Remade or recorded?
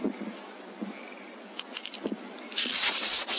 recorded